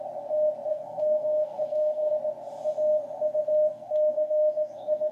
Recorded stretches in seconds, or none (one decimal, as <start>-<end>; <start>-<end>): 0.0-0.7; 2.1-3.7